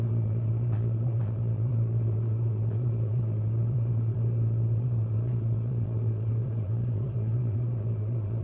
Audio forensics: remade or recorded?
remade